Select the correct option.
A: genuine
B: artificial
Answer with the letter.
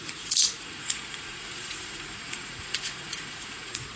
B